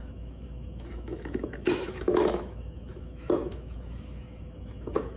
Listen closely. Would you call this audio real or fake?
fake